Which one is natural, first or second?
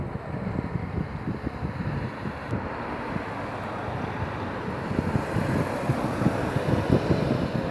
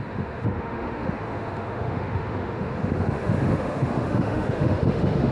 first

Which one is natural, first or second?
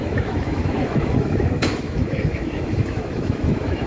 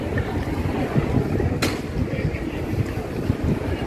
second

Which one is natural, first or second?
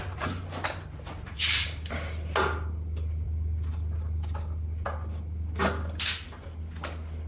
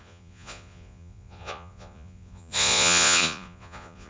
first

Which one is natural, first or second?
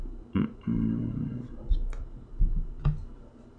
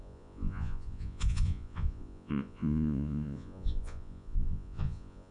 first